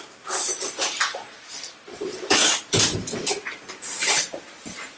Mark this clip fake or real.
fake